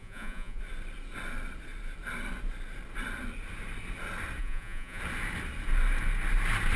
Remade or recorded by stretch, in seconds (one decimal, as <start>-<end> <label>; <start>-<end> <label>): 0.0-0.6 remade; 0.6-4.4 recorded; 4.4-5.0 remade; 5.0-6.8 recorded